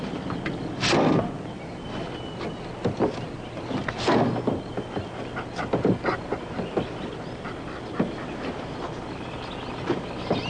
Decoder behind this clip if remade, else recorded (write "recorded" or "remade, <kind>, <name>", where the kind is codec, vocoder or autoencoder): recorded